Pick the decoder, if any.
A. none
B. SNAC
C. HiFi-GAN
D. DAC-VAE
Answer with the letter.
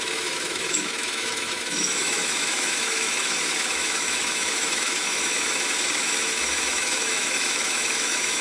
D